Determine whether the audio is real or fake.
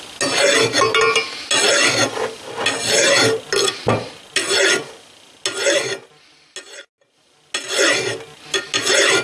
real